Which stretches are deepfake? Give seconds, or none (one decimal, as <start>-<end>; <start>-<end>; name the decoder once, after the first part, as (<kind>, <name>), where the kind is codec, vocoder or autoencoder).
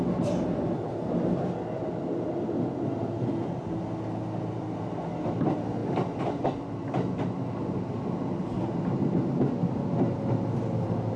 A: none